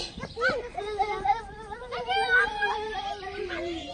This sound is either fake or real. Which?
real